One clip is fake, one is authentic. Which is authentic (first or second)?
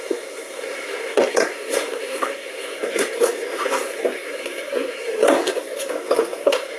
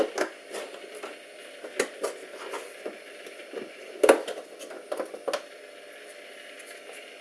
second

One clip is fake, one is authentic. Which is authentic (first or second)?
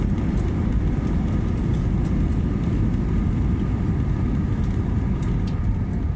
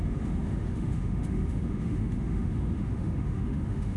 first